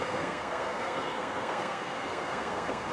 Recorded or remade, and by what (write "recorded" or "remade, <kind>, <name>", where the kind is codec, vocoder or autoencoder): remade, codec, SNAC